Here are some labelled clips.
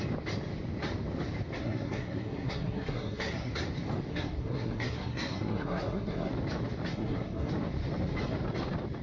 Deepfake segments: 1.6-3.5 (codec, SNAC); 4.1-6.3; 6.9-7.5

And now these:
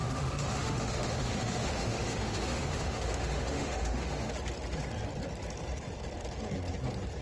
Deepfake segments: 0.0-4.3 (autoencoder, DAC-VAE)

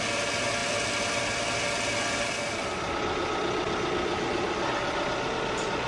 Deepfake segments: none

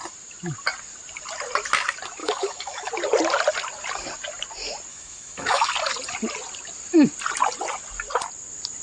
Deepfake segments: 2.2-2.9 (autoencoder, DAC-VAE); 4.9-5.7

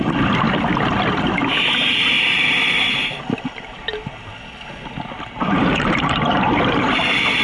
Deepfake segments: 5.4-7.0 (vocoder, BigVGAN v2)